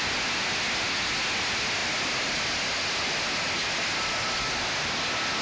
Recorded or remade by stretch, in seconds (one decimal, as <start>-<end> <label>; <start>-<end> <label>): 0.0-5.4 recorded